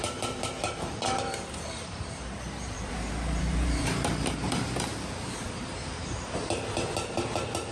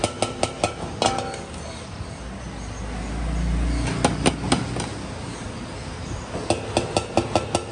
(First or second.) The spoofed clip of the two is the first